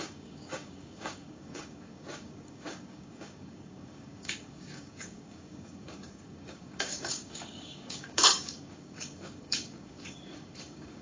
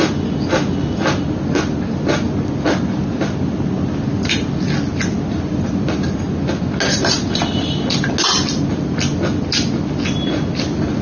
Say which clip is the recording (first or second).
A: second